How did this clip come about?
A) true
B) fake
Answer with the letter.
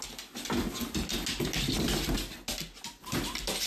A